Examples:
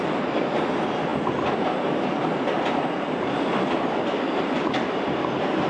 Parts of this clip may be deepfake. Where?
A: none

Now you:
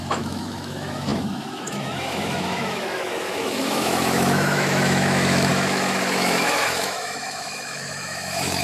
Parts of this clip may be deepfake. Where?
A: 0.0-8.6 (autoencoder, DAC-VAE)

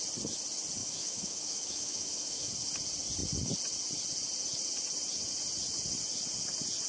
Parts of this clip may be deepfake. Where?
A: 0.8-2.5 (autoencoder, DAC-VAE)

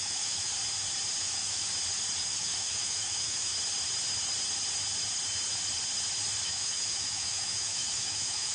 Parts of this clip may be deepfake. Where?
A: 0.0-0.5 (autoencoder, DAC-VAE); 1.2-1.6; 2.3-3.5; 6.4-8.5

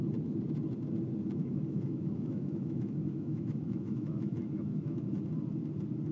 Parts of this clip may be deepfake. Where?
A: 1.4-5.1 (autoencoder, DAC-VAE)

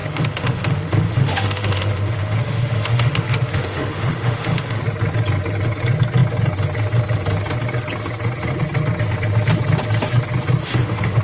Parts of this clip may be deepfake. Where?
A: 0.0-4.8 (autoencoder, DAC-VAE); 10.6-11.2

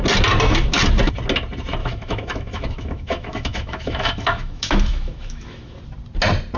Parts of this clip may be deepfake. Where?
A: 1.8-5.8 (autoencoder, DAC-VAE)

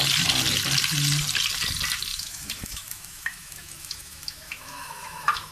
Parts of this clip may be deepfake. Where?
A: 2.1-5.5 (autoencoder, DAC-VAE)